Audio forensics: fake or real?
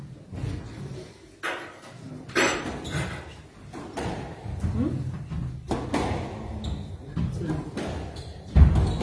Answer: real